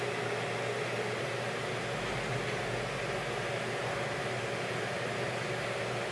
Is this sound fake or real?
real